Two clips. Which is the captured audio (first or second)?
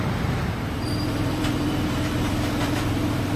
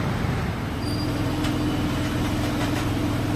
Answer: second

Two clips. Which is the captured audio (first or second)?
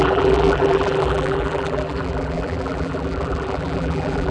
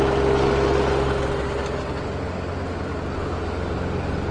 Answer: second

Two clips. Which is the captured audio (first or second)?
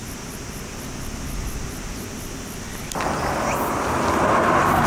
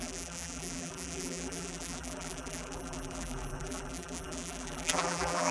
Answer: first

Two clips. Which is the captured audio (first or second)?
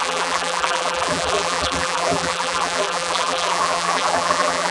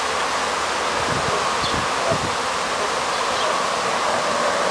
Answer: second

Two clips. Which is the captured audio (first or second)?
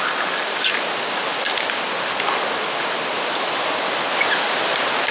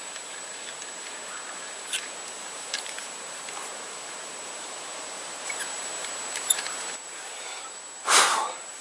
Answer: first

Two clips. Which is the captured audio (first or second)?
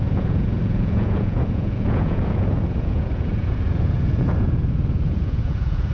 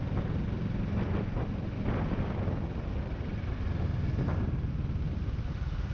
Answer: second